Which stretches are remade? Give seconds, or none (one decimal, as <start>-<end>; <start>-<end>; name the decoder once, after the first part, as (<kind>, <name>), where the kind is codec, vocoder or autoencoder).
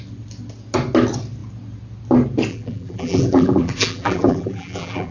2.5-5.1 (vocoder, BigVGAN v2)